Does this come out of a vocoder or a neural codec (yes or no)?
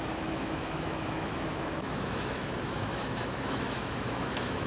yes